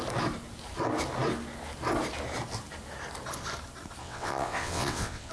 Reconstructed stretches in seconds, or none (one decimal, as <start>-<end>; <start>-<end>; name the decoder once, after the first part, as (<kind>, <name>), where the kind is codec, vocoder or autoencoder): 4.0-5.3 (vocoder, WaveNeXt)